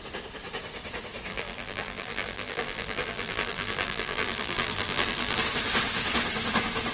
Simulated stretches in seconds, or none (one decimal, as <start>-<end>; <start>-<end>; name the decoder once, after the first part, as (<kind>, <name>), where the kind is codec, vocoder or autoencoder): 1.3-5.4 (vocoder, BigVGAN v2)